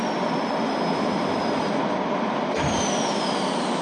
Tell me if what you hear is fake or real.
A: real